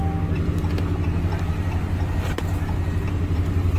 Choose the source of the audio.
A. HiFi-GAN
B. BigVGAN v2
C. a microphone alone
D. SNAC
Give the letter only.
C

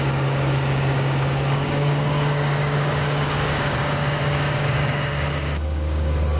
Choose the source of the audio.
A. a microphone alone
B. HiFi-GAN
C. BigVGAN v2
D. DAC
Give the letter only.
D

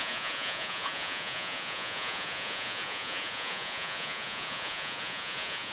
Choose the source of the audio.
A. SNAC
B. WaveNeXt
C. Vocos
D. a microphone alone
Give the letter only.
C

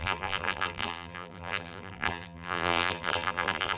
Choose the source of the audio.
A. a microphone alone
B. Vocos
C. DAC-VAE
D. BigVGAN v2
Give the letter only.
D